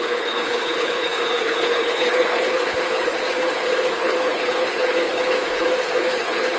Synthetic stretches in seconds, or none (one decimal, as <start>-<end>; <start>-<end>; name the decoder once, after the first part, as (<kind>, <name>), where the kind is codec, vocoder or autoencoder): 0.0-6.6 (codec, HILCodec)